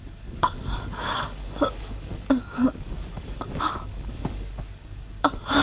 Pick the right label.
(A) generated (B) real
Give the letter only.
A